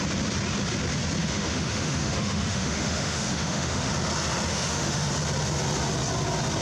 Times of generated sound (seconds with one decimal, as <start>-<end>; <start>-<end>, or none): 1.2-3.9; 4.5-5.1